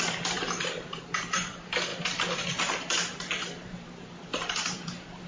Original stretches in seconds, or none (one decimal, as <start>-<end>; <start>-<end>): 1.9-2.6